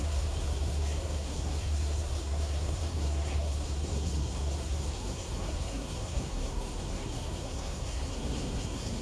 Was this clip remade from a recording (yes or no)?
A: yes